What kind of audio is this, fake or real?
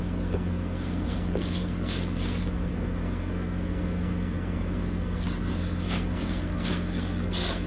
fake